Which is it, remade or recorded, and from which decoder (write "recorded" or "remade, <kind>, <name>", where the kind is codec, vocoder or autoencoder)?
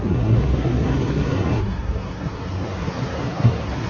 remade, codec, SNAC